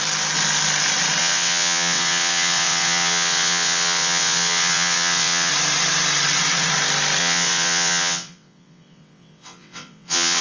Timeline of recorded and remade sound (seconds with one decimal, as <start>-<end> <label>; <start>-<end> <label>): 0.0-1.2 recorded; 1.2-5.5 remade; 5.5-7.2 recorded; 7.2-10.4 remade